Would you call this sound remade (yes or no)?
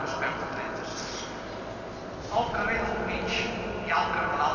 no